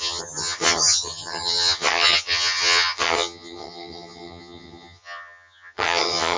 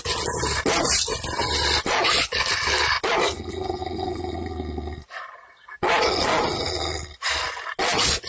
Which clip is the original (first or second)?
second